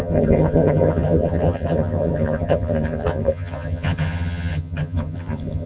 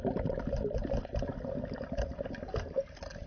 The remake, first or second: first